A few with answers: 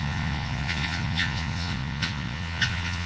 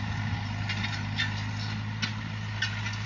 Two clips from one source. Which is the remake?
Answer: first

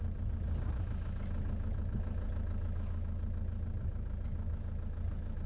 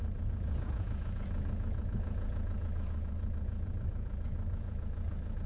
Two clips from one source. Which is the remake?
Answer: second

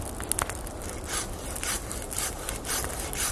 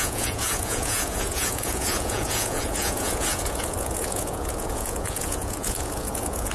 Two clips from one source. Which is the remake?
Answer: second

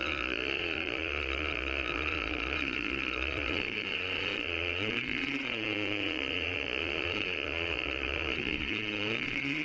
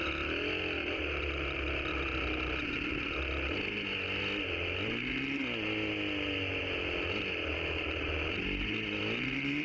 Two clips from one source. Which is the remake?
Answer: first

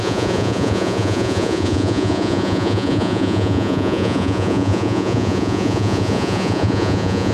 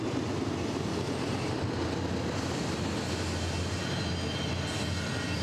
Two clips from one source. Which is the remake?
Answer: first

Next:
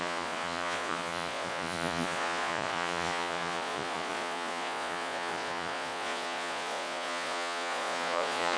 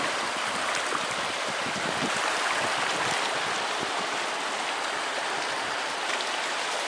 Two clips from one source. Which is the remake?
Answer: first